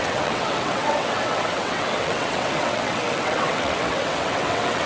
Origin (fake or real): fake